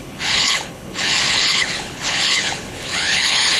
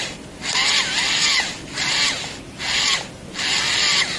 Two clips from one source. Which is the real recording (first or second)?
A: second